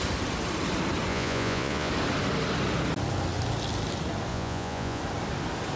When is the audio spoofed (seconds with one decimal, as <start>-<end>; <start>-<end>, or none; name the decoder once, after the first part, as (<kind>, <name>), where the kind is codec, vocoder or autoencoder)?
1.1-1.9 (vocoder, Vocos); 4.3-5.0